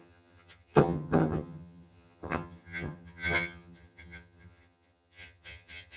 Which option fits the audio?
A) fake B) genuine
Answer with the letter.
A